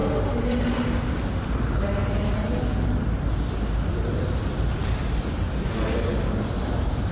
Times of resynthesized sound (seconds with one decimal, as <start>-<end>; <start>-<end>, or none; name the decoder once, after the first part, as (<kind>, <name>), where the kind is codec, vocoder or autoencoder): none